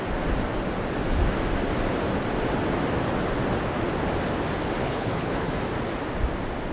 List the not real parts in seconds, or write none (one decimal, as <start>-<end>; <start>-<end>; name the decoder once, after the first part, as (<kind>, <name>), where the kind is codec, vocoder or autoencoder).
4.8-5.5 (codec, HILCodec)